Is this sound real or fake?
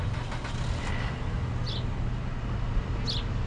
real